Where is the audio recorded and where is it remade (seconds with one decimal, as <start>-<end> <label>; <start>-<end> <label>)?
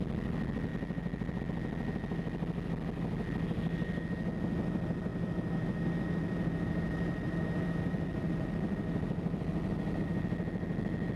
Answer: 0.0-0.7 recorded; 0.7-1.4 remade; 1.4-5.1 recorded; 5.1-10.0 remade; 10.0-11.2 recorded